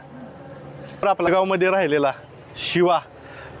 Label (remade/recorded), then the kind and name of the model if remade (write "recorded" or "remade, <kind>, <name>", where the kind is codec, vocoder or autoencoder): recorded